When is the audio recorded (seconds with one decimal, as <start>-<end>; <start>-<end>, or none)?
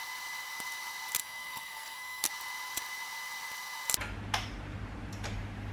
0.0-1.2; 2.3-5.7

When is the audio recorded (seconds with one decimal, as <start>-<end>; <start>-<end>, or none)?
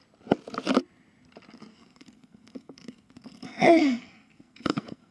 0.0-1.7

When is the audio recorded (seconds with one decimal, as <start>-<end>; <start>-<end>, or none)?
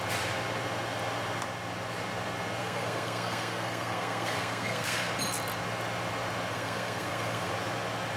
0.0-2.6; 5.1-6.5; 7.5-8.2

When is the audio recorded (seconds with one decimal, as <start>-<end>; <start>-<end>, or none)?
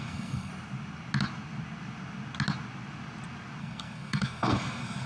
0.5-3.6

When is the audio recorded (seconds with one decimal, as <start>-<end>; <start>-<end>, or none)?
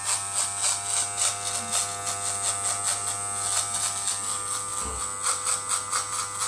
0.0-6.5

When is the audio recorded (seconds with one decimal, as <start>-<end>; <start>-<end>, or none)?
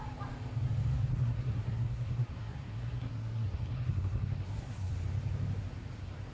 0.0-1.1; 4.9-6.3